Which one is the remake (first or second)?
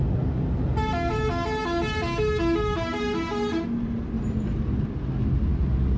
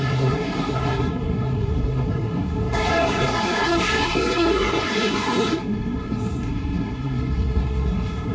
second